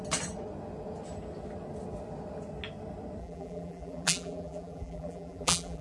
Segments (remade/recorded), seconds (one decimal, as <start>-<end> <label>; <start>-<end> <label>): 0.0-3.2 recorded; 3.2-5.8 remade